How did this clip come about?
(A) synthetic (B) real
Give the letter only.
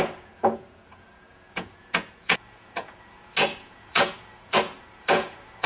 A